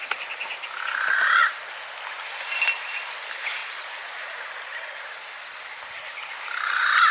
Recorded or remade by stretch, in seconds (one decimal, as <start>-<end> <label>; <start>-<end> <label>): 0.0-3.6 recorded; 3.6-4.4 remade; 4.4-7.1 recorded